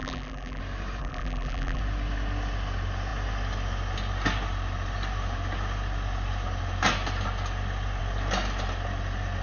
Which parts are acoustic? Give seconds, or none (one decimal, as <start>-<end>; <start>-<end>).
0.6-1.0; 1.8-9.4